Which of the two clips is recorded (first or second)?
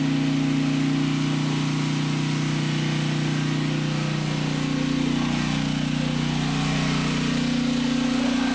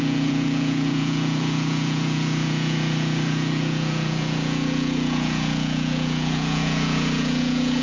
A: first